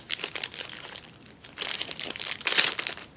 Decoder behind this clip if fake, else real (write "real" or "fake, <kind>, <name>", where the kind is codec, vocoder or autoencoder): real